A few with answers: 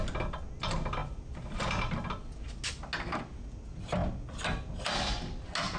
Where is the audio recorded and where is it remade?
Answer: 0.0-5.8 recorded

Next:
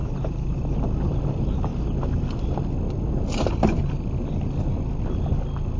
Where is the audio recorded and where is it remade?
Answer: 0.0-0.6 remade; 0.6-5.8 recorded

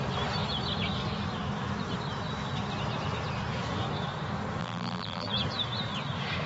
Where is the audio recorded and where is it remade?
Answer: 0.0-4.6 recorded; 4.6-5.3 remade; 5.3-6.5 recorded

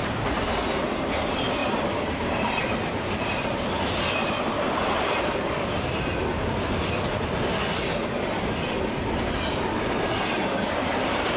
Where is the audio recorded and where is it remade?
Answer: 0.0-0.5 remade; 0.5-1.6 recorded; 1.6-3.5 remade; 3.5-11.4 recorded

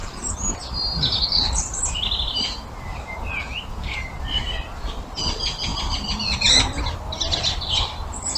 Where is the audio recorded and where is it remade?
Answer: 0.0-1.2 remade; 1.2-1.7 recorded; 1.7-2.3 remade; 2.3-8.4 recorded

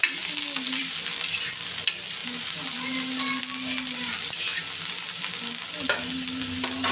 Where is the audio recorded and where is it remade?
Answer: 0.0-6.9 recorded

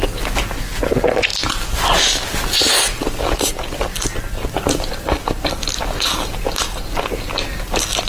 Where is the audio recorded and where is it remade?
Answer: 0.0-8.1 recorded